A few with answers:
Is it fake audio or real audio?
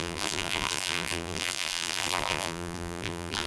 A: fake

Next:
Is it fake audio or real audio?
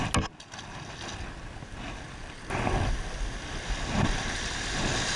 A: real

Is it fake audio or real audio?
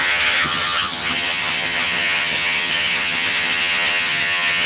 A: fake